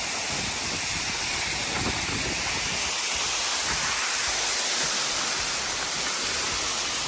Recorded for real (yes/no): yes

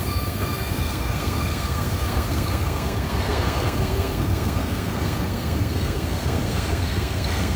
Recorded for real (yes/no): no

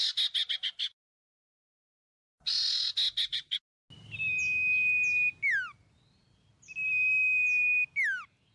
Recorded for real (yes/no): yes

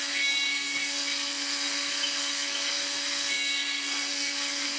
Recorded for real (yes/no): no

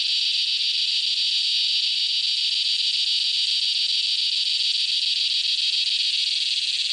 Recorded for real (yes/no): yes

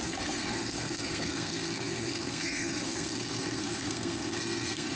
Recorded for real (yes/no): no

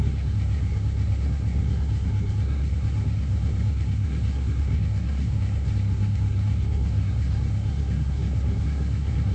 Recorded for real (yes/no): no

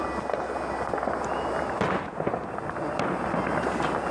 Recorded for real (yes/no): yes